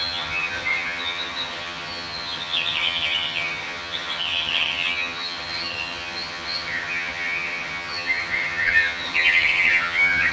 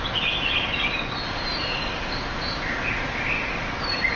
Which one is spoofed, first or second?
first